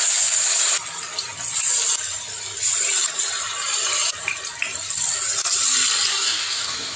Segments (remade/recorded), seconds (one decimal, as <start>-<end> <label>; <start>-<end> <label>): 0.0-6.1 recorded; 6.1-7.0 remade

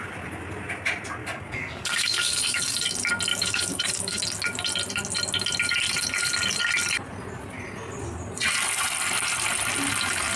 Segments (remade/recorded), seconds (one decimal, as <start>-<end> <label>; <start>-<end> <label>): 0.0-1.2 recorded; 1.2-2.6 remade; 2.6-3.3 recorded; 3.3-4.2 remade; 4.2-10.4 recorded